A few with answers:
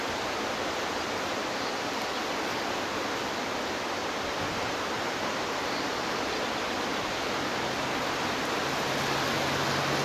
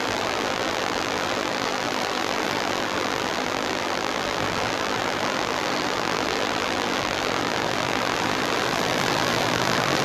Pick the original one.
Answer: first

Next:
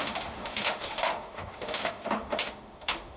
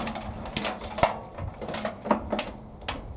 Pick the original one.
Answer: second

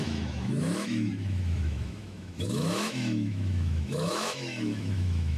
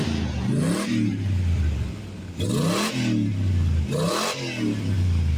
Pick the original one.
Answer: second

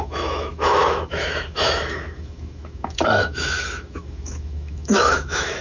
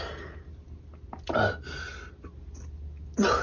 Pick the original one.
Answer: second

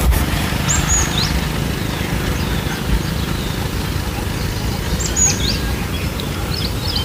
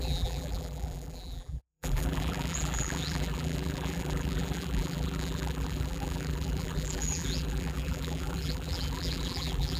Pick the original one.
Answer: first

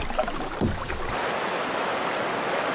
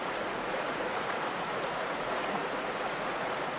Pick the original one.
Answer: first